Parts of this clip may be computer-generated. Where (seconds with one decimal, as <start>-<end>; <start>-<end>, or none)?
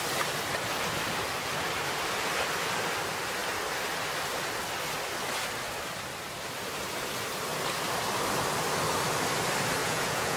9.8-10.4